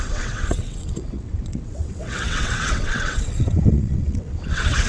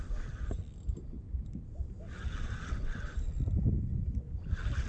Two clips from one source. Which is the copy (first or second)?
first